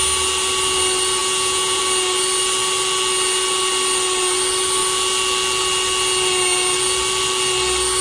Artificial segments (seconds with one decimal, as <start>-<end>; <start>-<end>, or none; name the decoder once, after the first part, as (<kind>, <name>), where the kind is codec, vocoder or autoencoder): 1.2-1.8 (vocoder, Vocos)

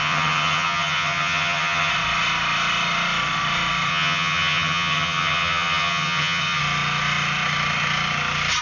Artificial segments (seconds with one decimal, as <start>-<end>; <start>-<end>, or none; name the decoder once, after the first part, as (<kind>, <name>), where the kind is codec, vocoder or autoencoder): 0.0-1.9 (vocoder, HiFi-GAN); 3.9-6.6

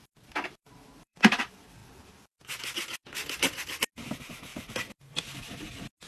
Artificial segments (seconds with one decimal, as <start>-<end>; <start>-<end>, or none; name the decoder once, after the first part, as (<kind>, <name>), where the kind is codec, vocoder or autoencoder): 0.0-1.8 (vocoder, BigVGAN v2); 4.1-4.5; 5.1-6.1

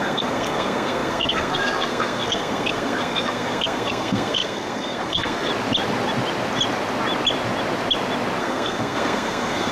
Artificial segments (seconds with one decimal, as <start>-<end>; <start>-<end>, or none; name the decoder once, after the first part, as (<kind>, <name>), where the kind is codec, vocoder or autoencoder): 0.0-5.5 (codec, SNAC); 8.4-9.7

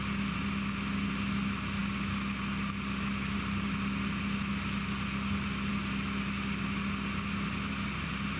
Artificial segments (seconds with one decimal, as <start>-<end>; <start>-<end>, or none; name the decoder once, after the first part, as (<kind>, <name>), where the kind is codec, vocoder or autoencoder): none

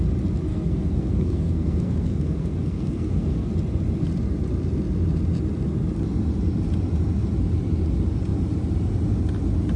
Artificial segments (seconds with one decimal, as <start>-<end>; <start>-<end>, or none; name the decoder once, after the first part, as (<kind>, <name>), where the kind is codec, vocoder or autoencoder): 0.5-3.5 (codec, SNAC)

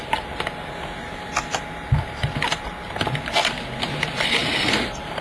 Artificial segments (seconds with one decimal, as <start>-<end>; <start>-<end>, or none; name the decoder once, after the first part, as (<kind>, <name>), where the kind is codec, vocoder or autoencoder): 4.4-5.2 (vocoder, BigVGAN v2)